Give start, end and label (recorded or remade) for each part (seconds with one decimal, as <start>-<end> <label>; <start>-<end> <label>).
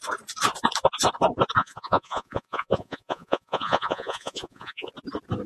0.0-1.6 recorded; 1.6-4.9 remade; 4.9-5.5 recorded